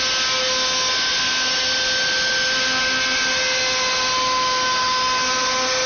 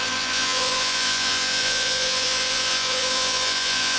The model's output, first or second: second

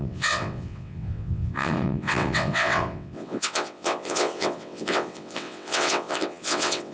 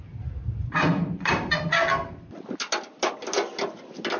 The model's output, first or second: first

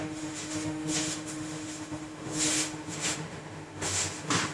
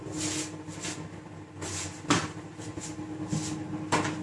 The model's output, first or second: first